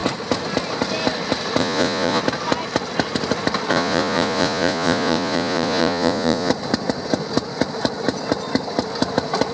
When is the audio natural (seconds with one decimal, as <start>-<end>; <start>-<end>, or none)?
0.0-1.6; 2.2-3.7; 6.5-9.5